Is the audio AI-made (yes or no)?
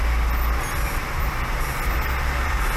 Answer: no